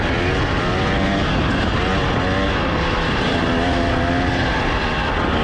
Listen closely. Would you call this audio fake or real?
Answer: real